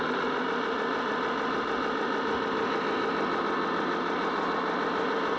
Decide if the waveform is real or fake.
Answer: real